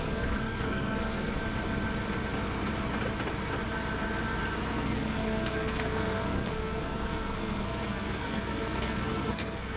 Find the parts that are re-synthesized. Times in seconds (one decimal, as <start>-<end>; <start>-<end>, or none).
0.0-1.4; 4.7-9.8